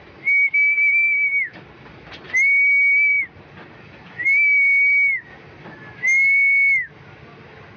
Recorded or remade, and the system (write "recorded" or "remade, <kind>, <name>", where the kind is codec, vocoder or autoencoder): recorded